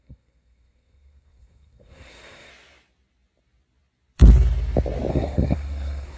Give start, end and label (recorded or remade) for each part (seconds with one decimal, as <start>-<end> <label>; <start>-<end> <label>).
0.0-2.5 remade; 2.5-5.1 recorded; 5.1-6.2 remade